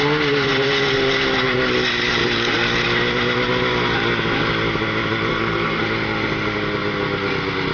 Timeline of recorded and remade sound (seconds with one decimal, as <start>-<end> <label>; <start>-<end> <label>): 0.0-5.3 recorded; 5.3-5.8 remade; 5.8-7.7 recorded